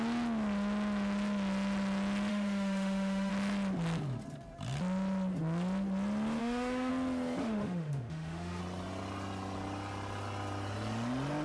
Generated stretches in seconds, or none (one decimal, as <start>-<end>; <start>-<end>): 2.3-3.3; 6.4-6.9; 7.4-8.6